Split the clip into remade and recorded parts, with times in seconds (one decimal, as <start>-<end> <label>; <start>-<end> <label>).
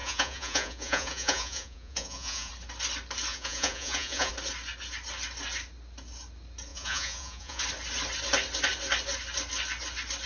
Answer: 0.0-2.5 remade; 2.5-3.3 recorded; 3.3-4.3 remade; 4.3-6.7 recorded; 6.7-7.6 remade; 7.6-10.3 recorded